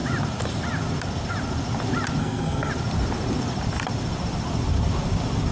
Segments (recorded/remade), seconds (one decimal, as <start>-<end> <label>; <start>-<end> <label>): 0.0-2.2 recorded; 2.2-2.7 remade; 2.7-5.5 recorded